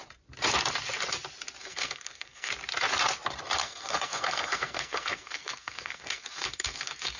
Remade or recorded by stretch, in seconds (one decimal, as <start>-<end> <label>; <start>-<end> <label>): 0.0-1.6 recorded; 1.6-2.5 remade; 2.5-3.6 recorded; 3.6-7.2 remade